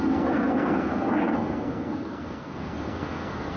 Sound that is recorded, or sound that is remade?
remade